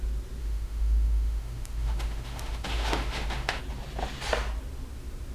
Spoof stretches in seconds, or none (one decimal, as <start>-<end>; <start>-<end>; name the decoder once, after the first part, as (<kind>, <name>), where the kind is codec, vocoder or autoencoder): 0.4-3.6 (autoencoder, DAC-VAE)